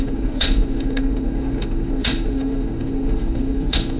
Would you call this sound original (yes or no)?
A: no